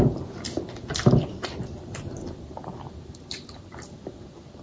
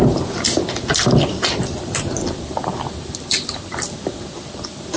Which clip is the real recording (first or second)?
first